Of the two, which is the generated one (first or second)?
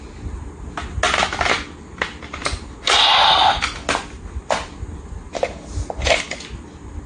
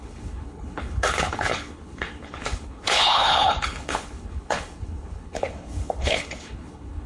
second